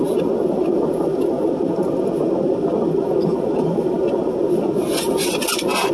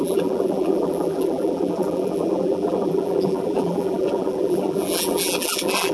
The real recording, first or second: first